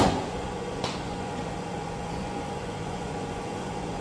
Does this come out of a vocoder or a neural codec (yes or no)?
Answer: yes